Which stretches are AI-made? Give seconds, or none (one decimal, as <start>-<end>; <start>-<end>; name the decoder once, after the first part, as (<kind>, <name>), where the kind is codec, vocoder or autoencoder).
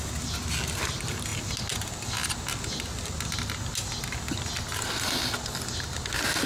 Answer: none